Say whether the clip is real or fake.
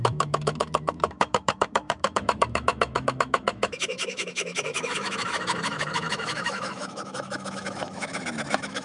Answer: fake